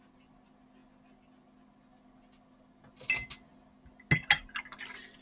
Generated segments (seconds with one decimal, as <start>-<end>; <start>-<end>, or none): none